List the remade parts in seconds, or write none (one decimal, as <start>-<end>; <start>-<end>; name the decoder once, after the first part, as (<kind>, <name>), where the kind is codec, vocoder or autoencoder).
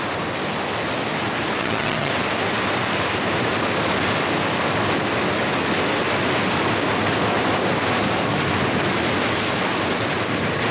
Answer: 1.6-2.1 (vocoder, HiFi-GAN)